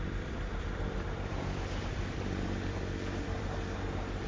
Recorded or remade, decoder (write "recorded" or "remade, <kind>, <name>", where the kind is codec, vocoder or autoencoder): remade, vocoder, BigVGAN v2